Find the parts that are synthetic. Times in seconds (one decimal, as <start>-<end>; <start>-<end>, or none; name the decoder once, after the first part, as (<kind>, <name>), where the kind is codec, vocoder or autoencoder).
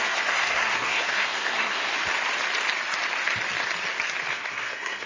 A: 0.0-1.9 (codec, SNAC); 4.3-5.1